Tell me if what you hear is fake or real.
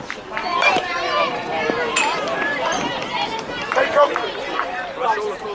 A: fake